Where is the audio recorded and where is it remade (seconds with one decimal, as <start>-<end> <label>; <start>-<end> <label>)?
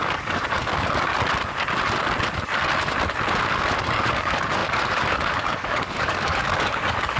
0.0-1.1 remade; 1.1-3.4 recorded; 3.4-7.2 remade